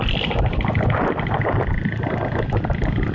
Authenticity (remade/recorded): recorded